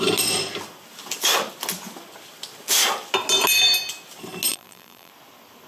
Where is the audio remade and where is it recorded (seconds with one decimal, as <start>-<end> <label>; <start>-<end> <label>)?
0.0-4.5 recorded; 4.5-5.1 remade; 5.1-5.7 recorded